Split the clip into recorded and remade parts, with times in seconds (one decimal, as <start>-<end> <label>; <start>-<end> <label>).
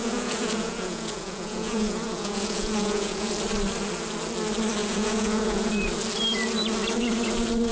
0.0-3.3 remade; 3.3-4.8 recorded; 4.8-5.7 remade; 5.7-7.7 recorded